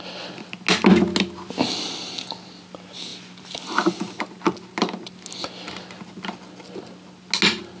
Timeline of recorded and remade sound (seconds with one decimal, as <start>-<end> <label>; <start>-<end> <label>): 0.0-7.8 recorded